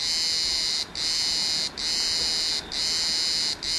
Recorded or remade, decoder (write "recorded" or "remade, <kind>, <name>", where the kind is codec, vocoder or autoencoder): recorded